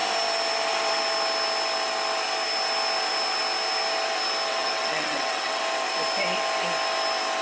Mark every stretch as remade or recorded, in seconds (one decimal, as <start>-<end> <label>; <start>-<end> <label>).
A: 0.0-4.5 recorded; 4.5-5.6 remade; 5.6-7.4 recorded